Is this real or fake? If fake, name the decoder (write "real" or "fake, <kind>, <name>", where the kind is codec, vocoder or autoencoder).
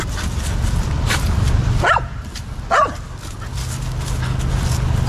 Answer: real